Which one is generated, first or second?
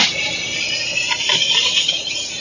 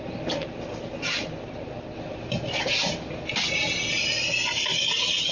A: first